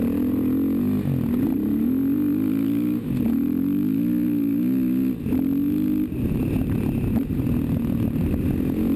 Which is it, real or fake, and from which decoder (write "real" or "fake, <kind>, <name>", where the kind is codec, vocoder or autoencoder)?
real